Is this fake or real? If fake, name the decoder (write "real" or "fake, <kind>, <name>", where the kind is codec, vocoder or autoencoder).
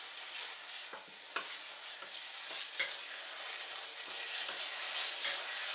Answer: real